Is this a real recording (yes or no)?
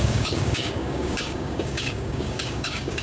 no